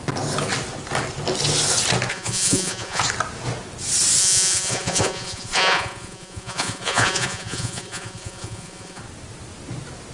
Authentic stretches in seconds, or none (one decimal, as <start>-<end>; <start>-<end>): 0.0-2.1; 3.0-4.2; 9.0-10.1